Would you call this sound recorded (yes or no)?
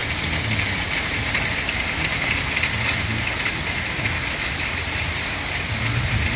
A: yes